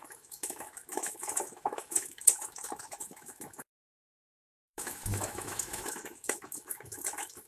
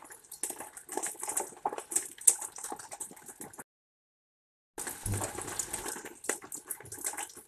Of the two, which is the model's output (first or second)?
first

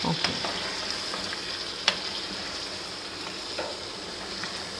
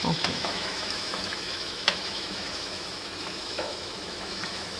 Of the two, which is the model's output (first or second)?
second